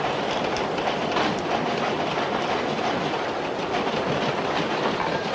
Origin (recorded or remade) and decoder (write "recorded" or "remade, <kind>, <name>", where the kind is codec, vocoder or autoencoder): recorded